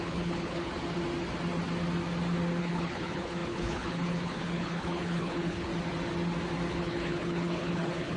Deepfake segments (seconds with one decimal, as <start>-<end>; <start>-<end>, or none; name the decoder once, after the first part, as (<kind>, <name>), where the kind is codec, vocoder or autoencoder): 0.0-0.7 (codec, HILCodec); 2.6-5.7; 6.7-8.2